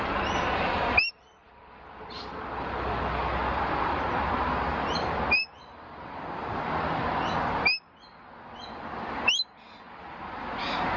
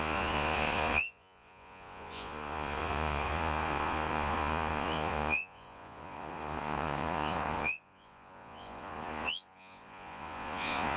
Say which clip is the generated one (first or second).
second